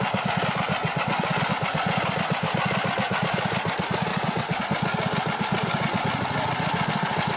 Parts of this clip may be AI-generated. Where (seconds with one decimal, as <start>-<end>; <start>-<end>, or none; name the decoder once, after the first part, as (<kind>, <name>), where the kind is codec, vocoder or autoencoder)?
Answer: 0.8-1.5 (vocoder, WaveNeXt); 4.1-4.6